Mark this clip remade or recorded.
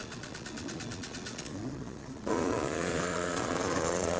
remade